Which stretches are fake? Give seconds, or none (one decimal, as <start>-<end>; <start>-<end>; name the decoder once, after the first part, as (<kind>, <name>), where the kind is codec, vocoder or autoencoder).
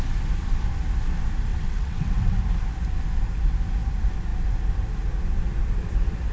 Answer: 1.5-2.4 (vocoder, WaveNeXt)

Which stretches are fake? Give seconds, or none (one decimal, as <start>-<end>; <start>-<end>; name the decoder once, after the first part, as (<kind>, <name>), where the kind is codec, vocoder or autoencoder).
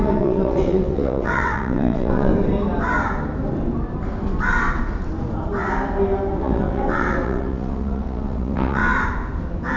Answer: 0.0-2.3 (vocoder, WaveNeXt); 6.4-8.8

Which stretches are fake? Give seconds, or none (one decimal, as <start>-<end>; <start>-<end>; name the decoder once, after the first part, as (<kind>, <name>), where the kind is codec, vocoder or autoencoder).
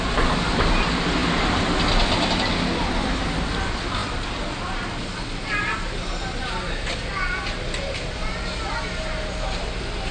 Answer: none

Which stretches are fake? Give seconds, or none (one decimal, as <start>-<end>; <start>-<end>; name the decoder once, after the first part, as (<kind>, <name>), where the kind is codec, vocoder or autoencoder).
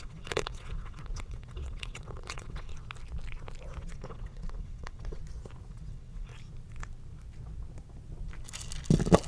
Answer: 0.0-2.7 (vocoder, WaveNeXt); 3.8-5.2; 5.7-6.3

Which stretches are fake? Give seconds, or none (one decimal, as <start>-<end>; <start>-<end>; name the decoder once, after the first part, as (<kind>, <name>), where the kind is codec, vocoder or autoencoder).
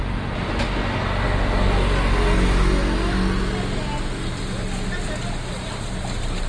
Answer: none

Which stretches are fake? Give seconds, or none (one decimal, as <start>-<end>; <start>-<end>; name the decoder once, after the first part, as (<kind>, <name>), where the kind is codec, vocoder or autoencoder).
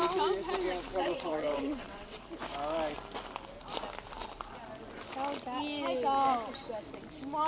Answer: 0.9-2.2 (vocoder, WaveNeXt)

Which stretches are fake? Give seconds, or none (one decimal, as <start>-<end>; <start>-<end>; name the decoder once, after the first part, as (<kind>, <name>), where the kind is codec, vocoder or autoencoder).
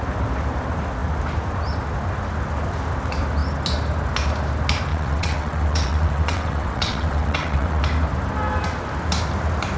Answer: 4.9-7.8 (vocoder, WaveNeXt)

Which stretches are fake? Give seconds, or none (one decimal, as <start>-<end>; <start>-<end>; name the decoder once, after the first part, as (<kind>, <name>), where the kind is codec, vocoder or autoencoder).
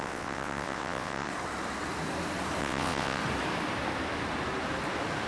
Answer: 0.0-1.3 (vocoder, WaveNeXt); 2.6-3.2